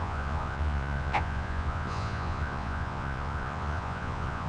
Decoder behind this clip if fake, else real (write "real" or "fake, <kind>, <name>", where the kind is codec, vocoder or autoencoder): fake, vocoder, Vocos